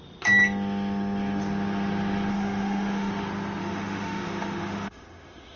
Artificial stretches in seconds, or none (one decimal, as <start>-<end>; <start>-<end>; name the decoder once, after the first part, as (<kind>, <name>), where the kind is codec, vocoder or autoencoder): 2.3-3.1 (autoencoder, DAC-VAE); 3.6-5.6